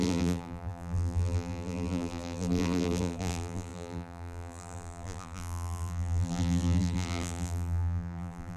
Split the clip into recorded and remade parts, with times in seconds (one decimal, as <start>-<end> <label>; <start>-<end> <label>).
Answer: 0.0-8.6 remade